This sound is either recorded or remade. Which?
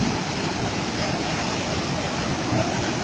recorded